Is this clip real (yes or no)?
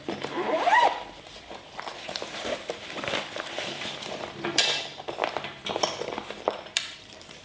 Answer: no